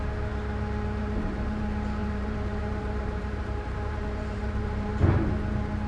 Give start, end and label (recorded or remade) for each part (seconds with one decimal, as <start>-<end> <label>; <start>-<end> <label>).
0.0-1.0 recorded; 1.0-1.6 remade; 1.6-2.0 recorded; 2.0-4.9 remade; 4.9-5.9 recorded